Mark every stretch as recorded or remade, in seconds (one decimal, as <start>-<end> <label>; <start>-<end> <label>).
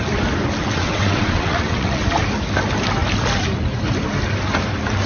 0.0-0.6 recorded; 0.6-2.0 remade; 2.0-5.1 recorded